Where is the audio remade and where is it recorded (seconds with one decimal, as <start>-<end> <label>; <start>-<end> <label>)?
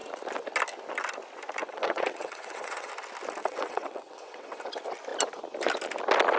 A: 0.0-1.6 recorded; 1.6-2.9 remade; 2.9-3.4 recorded; 3.4-4.6 remade; 4.6-6.4 recorded